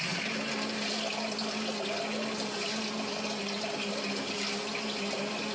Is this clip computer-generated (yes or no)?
no